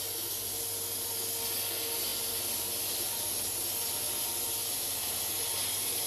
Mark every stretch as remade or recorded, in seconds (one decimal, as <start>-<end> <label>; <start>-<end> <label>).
0.0-6.1 recorded